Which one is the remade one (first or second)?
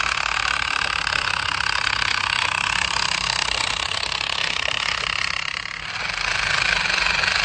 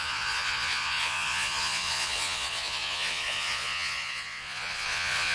second